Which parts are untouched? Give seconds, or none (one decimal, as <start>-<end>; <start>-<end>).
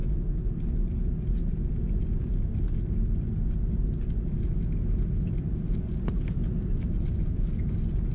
0.0-1.6; 2.3-5.9; 6.4-7.2